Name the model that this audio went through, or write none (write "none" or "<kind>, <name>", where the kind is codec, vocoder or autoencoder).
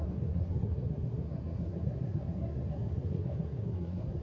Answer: codec, SNAC